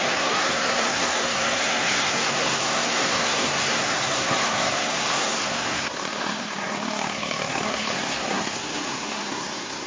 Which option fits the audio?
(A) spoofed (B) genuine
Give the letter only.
A